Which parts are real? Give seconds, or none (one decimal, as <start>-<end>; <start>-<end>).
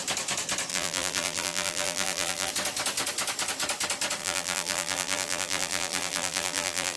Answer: 0.0-0.7; 2.5-4.2